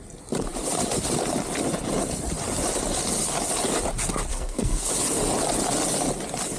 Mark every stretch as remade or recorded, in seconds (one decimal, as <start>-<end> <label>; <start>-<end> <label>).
0.0-4.3 recorded; 4.3-4.9 remade; 4.9-6.6 recorded